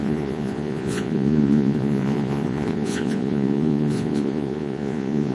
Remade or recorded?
remade